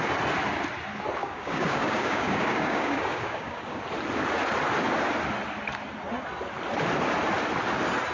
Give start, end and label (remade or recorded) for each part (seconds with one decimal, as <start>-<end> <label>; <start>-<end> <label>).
0.0-1.2 recorded; 1.2-3.8 remade; 3.8-8.1 recorded